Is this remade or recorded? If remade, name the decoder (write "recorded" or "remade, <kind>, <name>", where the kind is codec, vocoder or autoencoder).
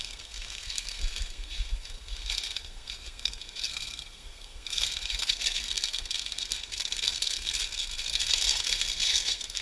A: remade, codec, SNAC